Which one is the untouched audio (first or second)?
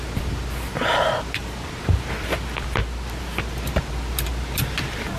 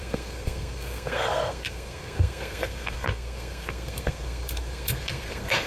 first